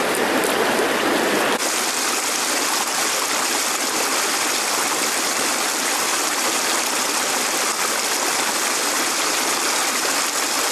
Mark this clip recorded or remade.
recorded